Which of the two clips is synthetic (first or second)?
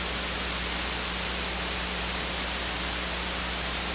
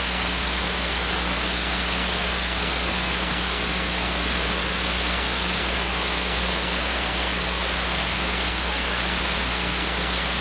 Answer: second